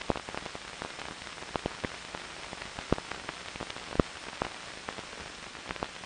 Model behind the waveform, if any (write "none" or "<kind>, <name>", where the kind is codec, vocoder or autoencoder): none